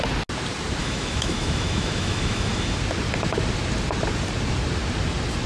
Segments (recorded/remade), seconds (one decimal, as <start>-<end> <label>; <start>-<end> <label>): 0.0-0.8 recorded; 0.8-2.8 remade; 2.8-5.5 recorded